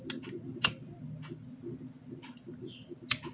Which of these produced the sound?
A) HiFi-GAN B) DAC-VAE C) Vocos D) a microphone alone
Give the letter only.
D